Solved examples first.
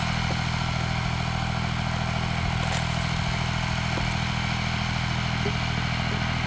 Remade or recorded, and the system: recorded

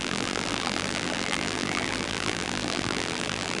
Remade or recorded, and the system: remade, vocoder, BigVGAN v2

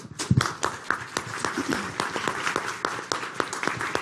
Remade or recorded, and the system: recorded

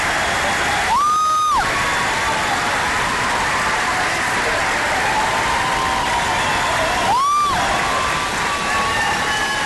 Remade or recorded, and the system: recorded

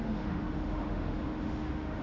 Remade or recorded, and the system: remade, autoencoder, DAC-VAE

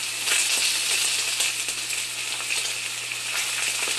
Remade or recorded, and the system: recorded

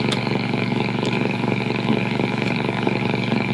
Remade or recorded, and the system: remade, codec, DAC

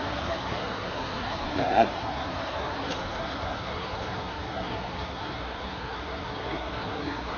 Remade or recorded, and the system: remade, codec, SNAC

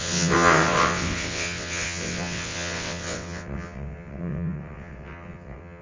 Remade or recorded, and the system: remade, vocoder, WaveNeXt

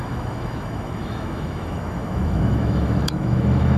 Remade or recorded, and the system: remade, autoencoder, DAC-VAE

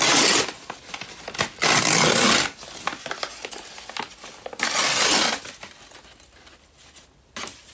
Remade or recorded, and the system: recorded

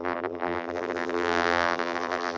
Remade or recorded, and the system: remade, vocoder, BigVGAN v2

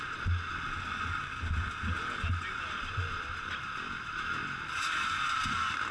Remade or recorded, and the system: recorded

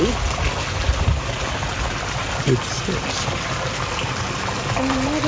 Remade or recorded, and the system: recorded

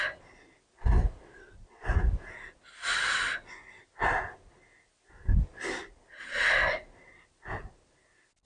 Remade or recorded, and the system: recorded